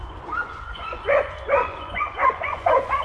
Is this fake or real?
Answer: fake